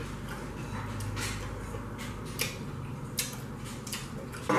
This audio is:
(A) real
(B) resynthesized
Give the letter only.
A